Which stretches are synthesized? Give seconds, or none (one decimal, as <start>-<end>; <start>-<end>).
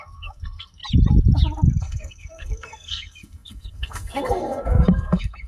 0.0-0.8; 1.8-5.5